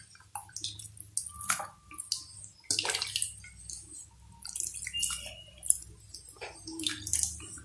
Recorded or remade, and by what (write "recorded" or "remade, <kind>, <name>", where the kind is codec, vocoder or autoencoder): recorded